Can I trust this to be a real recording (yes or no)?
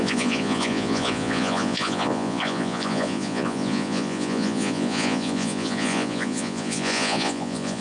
no